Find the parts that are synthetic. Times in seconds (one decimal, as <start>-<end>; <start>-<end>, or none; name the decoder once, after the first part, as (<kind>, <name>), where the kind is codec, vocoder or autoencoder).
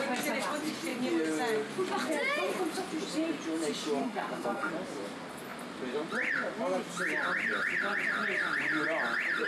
4.0-4.7 (codec, SNAC)